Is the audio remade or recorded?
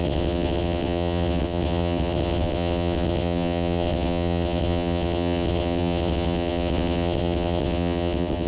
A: remade